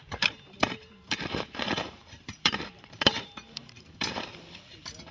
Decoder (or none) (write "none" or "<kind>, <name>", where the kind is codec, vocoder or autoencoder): vocoder, BigVGAN v2